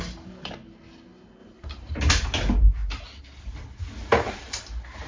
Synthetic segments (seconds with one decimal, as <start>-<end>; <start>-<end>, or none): 1.4-2.0; 4.1-4.6